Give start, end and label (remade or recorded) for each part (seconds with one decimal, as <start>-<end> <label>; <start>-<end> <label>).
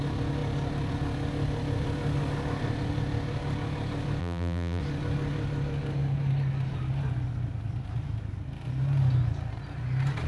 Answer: 0.0-4.2 recorded; 4.2-4.8 remade; 4.8-10.3 recorded